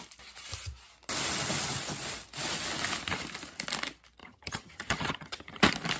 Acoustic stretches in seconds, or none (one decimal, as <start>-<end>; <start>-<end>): 0.0-4.2; 5.6-6.0